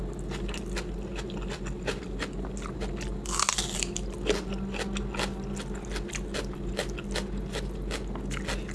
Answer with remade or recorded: recorded